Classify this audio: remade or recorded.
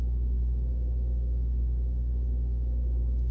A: remade